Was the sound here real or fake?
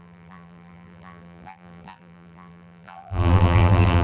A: fake